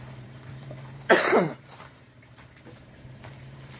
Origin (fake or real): fake